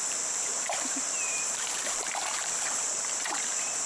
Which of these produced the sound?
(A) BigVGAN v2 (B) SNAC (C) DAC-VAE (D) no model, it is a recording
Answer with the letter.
A